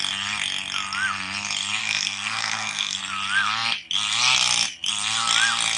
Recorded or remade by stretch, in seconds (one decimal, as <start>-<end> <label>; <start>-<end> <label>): 0.0-1.8 recorded; 1.8-3.0 remade; 3.0-5.8 recorded